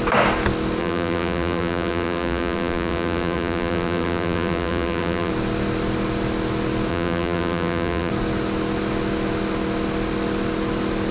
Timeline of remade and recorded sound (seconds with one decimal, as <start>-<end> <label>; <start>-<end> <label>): 0.0-0.8 recorded; 0.8-5.3 remade; 5.3-6.9 recorded; 6.9-8.1 remade; 8.1-11.1 recorded